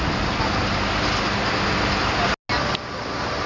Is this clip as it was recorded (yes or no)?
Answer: yes